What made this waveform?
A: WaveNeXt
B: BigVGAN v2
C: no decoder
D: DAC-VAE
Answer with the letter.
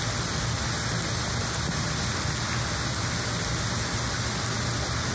C